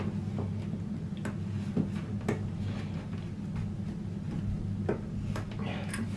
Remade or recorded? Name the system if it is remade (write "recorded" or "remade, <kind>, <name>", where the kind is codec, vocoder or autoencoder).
recorded